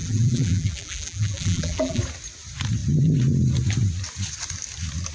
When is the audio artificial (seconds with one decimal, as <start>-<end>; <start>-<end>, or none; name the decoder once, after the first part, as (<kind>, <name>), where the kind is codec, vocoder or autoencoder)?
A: 0.0-2.0 (vocoder, BigVGAN v2)

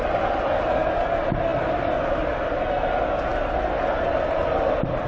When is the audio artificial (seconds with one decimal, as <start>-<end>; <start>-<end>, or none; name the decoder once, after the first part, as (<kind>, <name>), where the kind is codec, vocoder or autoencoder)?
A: none

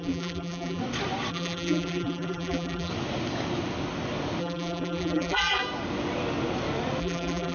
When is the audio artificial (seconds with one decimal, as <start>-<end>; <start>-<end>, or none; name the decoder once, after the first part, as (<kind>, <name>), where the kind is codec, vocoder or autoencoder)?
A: 0.0-0.8 (vocoder, BigVGAN v2); 1.3-2.9; 4.4-5.6; 7.0-7.5

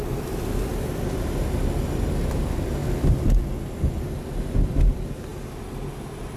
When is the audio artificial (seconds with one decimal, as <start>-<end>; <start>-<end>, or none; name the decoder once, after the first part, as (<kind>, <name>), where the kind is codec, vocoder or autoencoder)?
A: none

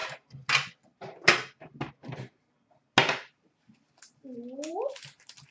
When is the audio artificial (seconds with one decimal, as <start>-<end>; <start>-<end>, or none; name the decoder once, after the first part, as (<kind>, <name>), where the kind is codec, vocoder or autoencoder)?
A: none

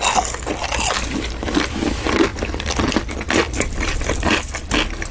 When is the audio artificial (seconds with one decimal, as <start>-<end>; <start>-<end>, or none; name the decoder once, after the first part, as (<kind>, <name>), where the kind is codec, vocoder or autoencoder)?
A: none